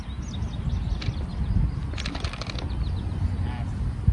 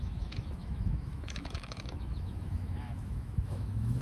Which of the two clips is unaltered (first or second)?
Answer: first